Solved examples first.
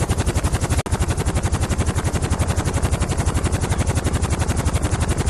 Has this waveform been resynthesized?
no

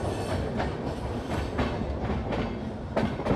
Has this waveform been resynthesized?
no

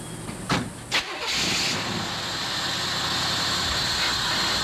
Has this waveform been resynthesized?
no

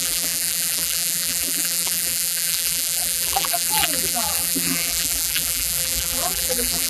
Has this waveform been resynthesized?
yes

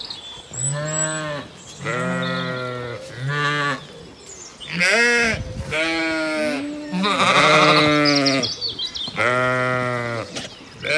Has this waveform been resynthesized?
no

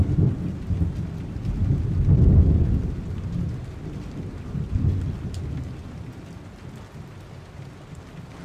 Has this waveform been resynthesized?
no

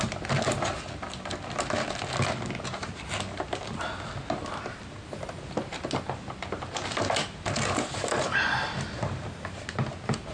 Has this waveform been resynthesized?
no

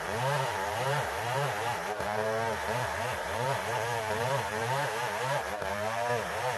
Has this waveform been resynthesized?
yes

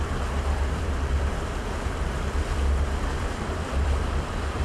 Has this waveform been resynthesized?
yes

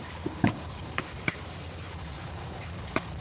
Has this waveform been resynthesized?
yes